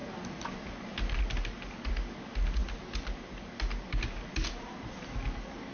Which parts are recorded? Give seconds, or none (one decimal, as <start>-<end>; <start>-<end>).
0.0-5.7